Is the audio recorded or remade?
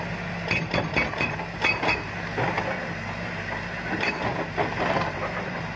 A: recorded